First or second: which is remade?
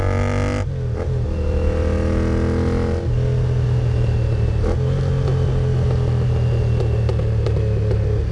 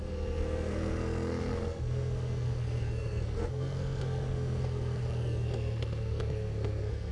second